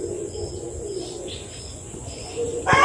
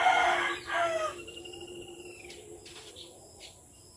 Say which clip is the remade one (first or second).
first